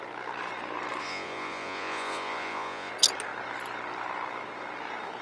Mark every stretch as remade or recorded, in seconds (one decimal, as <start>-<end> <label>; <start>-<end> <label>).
0.0-1.0 recorded; 1.0-2.9 remade; 2.9-5.2 recorded